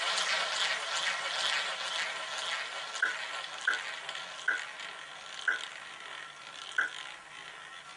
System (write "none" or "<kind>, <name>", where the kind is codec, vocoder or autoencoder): none